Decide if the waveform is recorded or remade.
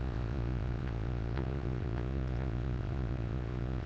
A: remade